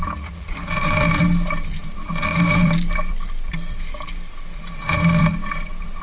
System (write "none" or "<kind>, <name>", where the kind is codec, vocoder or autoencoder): vocoder, BigVGAN v2